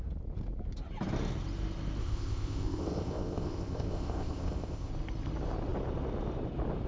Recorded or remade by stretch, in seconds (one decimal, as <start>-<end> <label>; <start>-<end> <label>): 0.0-2.0 recorded; 2.0-4.9 remade; 4.9-6.9 recorded